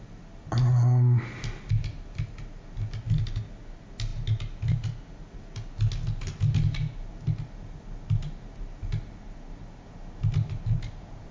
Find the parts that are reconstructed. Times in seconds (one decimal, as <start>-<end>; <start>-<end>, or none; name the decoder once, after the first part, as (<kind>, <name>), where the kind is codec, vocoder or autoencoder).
none